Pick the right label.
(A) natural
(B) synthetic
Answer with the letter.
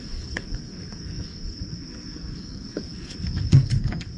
B